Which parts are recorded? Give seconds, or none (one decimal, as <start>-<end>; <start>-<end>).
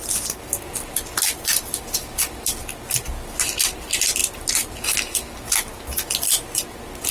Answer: 0.0-4.2; 4.7-7.1